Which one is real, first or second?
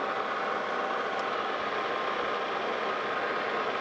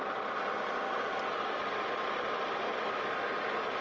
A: first